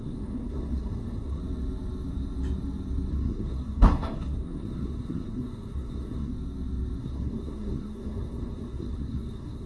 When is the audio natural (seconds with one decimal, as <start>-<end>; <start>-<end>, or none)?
1.4-3.1; 6.3-7.0